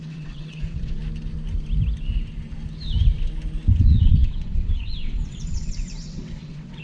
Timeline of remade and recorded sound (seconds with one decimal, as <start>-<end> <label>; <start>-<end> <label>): 0.0-1.0 remade; 1.0-3.7 recorded; 3.7-6.8 remade

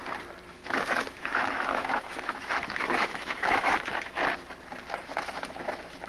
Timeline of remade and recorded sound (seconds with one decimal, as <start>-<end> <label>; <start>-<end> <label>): 0.0-0.5 recorded; 0.5-4.2 remade; 4.2-5.0 recorded; 5.0-6.1 remade

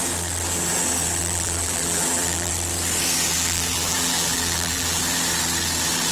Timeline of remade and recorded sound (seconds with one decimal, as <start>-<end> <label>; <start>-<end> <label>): 0.0-1.2 recorded; 1.2-2.5 remade; 2.5-3.3 recorded; 3.3-5.0 remade; 5.0-6.1 recorded

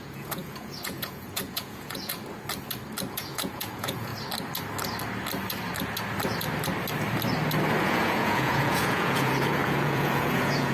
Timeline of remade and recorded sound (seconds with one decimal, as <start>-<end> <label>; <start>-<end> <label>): 0.0-2.1 remade; 2.1-3.1 recorded; 3.1-4.1 remade; 4.1-7.8 recorded; 7.8-10.7 remade

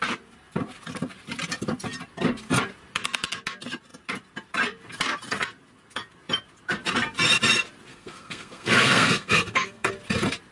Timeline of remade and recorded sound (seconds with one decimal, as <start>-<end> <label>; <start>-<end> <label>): 0.0-7.9 recorded; 7.9-9.9 remade; 9.9-10.5 recorded

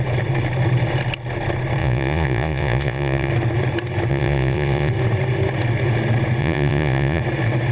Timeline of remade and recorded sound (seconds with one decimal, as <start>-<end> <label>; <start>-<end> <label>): 0.0-1.8 recorded; 1.8-3.3 remade; 3.3-4.1 recorded; 4.1-4.9 remade; 4.9-6.4 recorded; 6.4-7.2 remade; 7.2-7.7 recorded

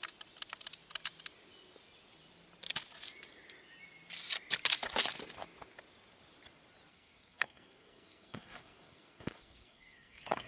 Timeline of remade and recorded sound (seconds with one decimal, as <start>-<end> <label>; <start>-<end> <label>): 0.0-6.9 recorded; 6.9-10.5 remade